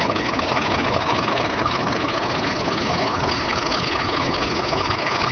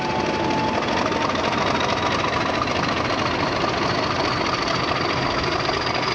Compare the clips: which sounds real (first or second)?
second